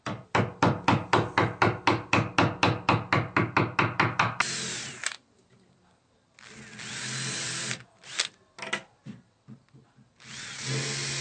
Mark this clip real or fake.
real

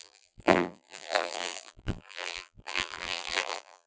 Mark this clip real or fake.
fake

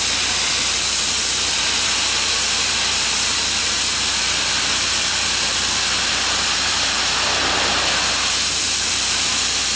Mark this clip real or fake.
real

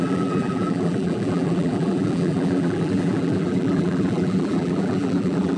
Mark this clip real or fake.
fake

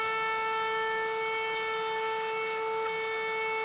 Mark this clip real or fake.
real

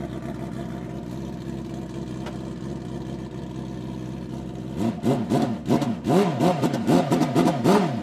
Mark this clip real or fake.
real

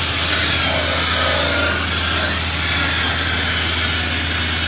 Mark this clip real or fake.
real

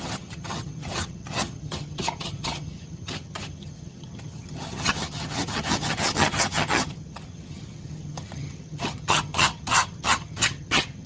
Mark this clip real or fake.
fake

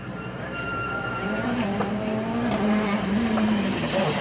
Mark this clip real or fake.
fake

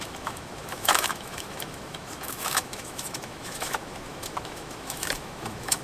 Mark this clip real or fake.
fake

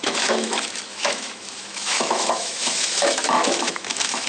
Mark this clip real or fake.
fake